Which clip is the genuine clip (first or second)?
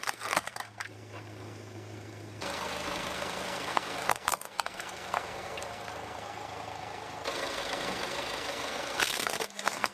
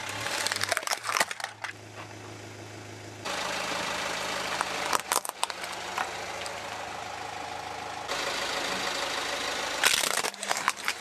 second